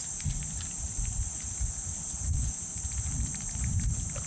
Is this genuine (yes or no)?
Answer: yes